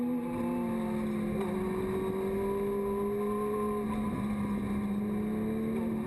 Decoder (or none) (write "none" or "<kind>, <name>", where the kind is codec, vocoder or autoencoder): none